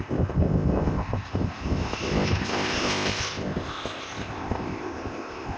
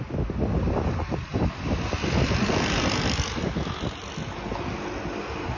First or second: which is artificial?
first